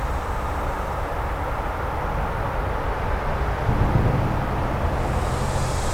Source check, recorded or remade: recorded